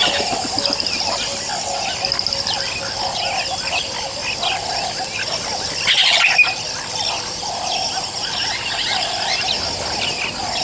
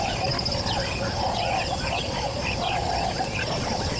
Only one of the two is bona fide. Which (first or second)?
first